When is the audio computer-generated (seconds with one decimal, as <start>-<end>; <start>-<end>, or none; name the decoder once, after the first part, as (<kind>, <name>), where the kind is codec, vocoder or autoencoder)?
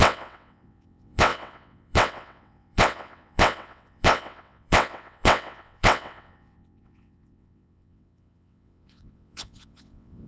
0.0-10.3 (vocoder, WaveNeXt)